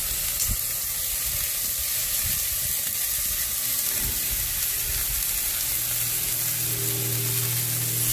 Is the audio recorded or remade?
recorded